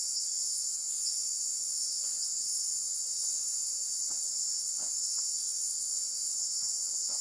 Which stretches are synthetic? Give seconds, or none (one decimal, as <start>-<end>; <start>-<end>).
0.0-7.2